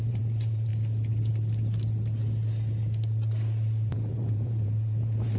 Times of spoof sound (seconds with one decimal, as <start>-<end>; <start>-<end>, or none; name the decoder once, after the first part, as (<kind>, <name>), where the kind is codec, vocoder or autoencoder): 0.0-0.7 (vocoder, BigVGAN v2); 3.9-5.4